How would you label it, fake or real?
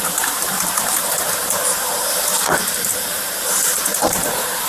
fake